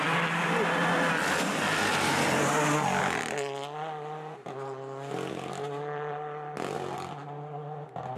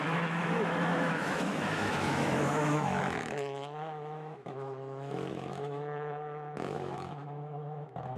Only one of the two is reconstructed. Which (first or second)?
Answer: second